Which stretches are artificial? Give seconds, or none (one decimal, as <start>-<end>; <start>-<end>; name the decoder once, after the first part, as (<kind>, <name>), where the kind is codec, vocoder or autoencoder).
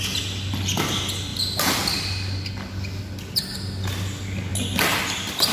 none